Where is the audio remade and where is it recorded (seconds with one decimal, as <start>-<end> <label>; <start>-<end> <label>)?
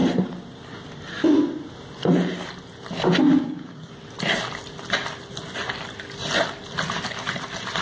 0.0-3.4 recorded; 3.4-3.9 remade; 3.9-7.8 recorded